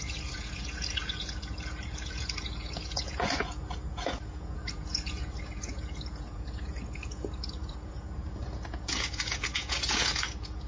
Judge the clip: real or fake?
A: fake